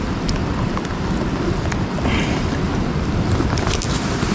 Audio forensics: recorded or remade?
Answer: recorded